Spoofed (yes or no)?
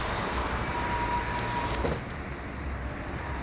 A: no